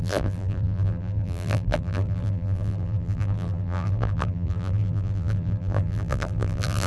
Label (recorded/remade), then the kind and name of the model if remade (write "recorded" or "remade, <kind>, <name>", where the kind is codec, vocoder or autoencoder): remade, vocoder, BigVGAN v2